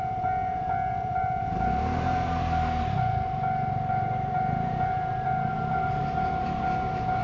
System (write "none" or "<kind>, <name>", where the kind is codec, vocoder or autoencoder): vocoder, BigVGAN v2